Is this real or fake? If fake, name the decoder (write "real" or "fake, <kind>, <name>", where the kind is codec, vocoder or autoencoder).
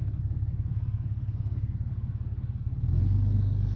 fake, codec, SNAC